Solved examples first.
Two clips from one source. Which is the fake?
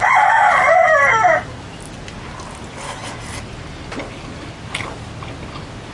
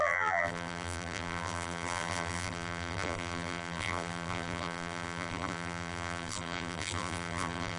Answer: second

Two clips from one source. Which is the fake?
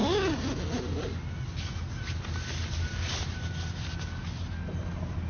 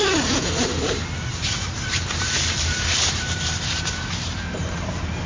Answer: second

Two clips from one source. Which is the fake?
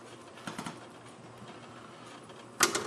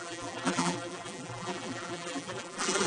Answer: second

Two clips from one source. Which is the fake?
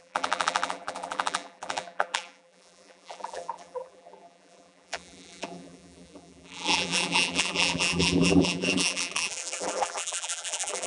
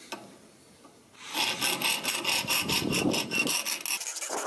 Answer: first